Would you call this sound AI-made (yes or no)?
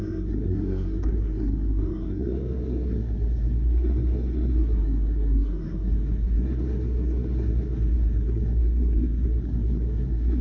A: yes